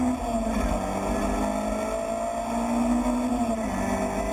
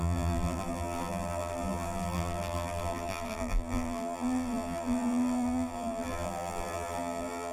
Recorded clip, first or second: first